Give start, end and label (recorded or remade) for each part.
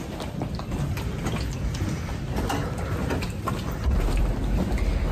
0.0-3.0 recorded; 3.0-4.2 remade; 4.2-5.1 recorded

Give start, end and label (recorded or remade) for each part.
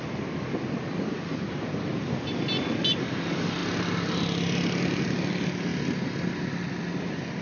0.0-7.4 recorded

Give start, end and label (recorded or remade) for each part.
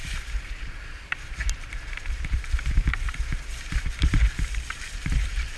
0.0-0.7 recorded; 0.7-5.6 remade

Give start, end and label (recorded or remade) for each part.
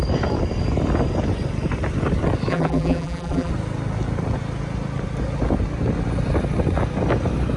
0.0-2.5 recorded; 2.5-3.5 remade; 3.5-7.6 recorded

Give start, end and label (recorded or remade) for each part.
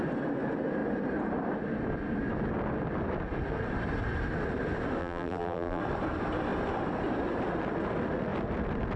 0.0-5.0 recorded; 5.0-5.8 remade; 5.8-9.0 recorded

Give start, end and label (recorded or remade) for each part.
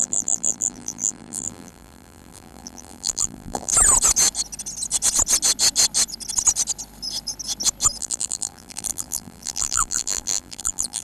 0.0-3.7 remade; 3.7-8.0 recorded; 8.0-11.0 remade